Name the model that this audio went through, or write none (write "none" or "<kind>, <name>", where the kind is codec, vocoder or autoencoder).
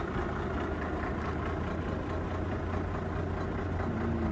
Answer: none